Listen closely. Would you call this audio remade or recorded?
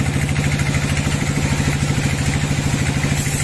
recorded